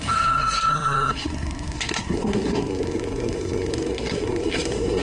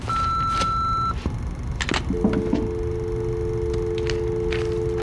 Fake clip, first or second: first